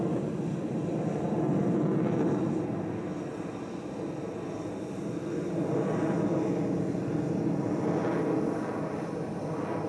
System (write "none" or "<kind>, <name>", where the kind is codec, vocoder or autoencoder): none